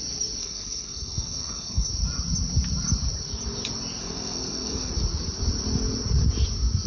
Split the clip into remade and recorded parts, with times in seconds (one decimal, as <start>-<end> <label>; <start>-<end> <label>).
0.0-0.4 recorded; 0.4-1.9 remade; 1.9-4.0 recorded; 4.0-4.9 remade; 4.9-6.9 recorded